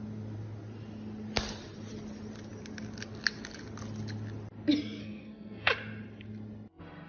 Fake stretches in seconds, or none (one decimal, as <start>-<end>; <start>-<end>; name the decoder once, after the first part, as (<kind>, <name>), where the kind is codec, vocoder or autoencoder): 5.0-5.7 (codec, SNAC)